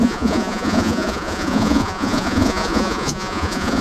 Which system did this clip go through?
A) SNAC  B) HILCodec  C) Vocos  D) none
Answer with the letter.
C